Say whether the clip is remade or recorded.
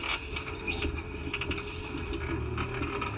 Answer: recorded